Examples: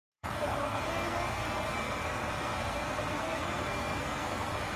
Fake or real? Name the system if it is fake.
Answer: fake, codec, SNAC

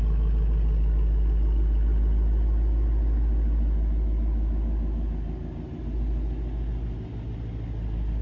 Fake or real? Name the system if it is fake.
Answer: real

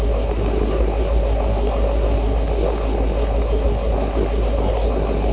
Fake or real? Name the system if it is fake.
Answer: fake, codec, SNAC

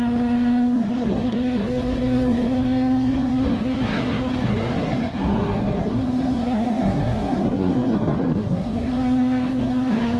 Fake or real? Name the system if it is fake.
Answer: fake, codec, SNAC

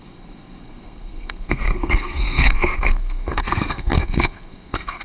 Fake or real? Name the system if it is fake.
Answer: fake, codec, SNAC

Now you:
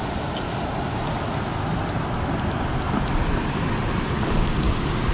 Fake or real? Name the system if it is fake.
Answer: real